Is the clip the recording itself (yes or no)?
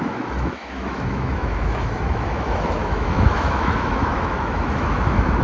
no